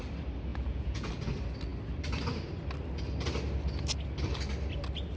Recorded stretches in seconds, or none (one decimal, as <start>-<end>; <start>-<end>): 0.0-0.5; 1.1-5.2